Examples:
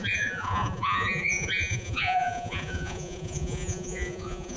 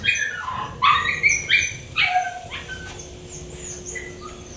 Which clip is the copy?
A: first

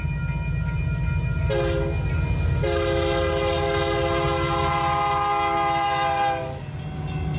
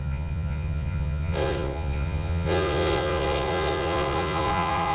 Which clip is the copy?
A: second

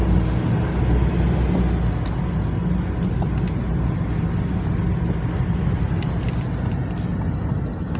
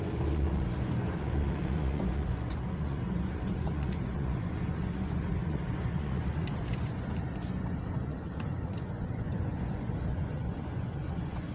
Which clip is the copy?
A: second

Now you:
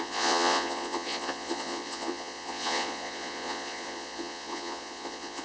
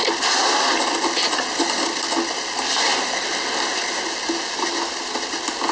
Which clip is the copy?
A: first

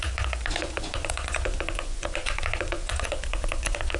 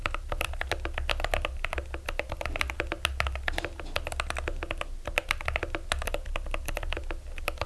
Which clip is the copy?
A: first